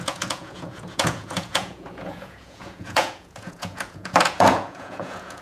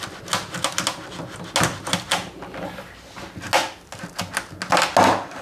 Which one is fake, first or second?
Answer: first